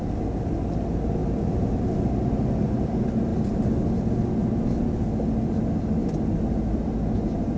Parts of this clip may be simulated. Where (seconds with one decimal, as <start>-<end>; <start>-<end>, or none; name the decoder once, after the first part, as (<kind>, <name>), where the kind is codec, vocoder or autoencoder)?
none

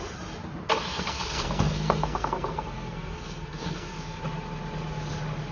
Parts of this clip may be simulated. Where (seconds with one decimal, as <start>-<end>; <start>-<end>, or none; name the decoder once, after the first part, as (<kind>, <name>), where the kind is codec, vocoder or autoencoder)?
0.9-4.2 (codec, SNAC)

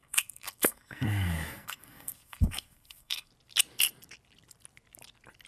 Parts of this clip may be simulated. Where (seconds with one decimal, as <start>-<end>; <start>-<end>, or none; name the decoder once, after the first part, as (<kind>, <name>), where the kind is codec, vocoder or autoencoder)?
0.0-3.3 (codec, SNAC)

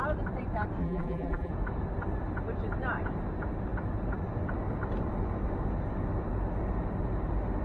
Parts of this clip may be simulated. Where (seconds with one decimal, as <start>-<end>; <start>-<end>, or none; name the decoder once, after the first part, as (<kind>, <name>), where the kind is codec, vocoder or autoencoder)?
0.8-1.5 (vocoder, BigVGAN v2)